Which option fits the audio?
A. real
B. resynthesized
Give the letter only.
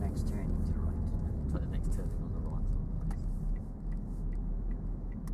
A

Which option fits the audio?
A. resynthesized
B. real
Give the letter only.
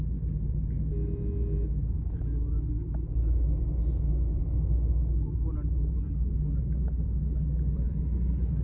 B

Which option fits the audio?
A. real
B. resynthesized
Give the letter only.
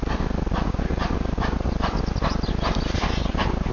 A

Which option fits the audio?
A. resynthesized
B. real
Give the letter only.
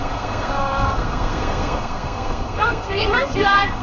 A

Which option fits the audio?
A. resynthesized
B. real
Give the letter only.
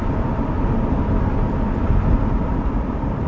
B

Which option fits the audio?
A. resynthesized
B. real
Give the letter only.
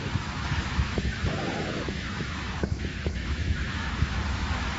A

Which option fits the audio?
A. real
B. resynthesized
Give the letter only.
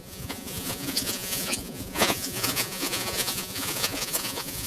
B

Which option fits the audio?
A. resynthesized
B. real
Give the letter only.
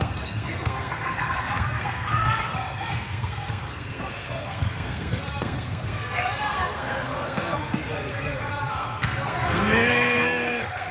A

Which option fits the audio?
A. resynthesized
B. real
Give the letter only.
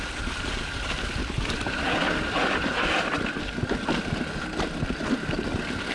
B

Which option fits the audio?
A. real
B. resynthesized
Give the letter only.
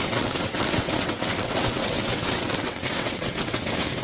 B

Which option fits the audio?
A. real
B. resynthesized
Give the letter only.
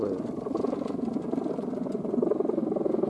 A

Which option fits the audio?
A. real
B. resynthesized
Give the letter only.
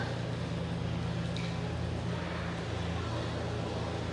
A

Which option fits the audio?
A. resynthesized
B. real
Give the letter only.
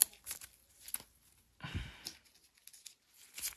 B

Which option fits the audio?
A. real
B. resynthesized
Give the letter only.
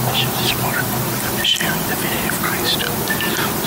A